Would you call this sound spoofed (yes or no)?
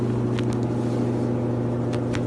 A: no